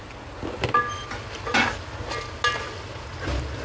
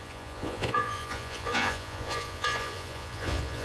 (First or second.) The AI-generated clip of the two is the second